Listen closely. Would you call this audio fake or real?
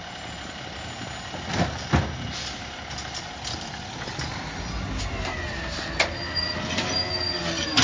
real